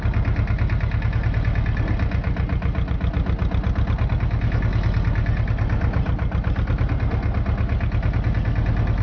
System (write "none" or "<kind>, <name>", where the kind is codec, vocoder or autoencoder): none